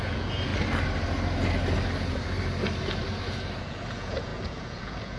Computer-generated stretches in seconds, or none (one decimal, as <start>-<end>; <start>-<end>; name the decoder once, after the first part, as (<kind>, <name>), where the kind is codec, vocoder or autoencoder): 0.0-0.5 (vocoder, Vocos); 3.6-5.2